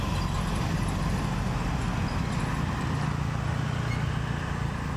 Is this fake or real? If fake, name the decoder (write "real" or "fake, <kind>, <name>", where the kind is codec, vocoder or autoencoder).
real